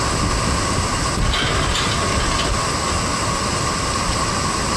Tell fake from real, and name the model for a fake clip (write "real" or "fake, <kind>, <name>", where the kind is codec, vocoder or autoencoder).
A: real